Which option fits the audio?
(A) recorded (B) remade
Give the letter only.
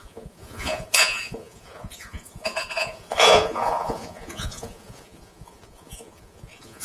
B